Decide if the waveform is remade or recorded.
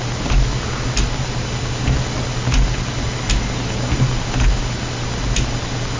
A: recorded